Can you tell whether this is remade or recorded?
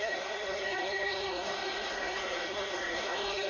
remade